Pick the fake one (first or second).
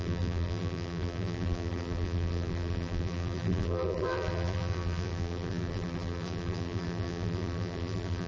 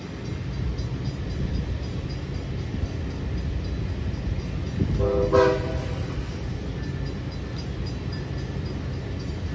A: first